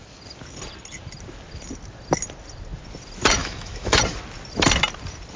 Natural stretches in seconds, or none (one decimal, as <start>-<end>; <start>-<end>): 0.0-3.4; 4.0-5.4